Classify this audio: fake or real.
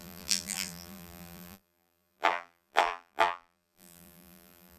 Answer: fake